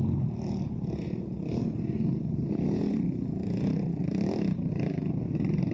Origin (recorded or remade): recorded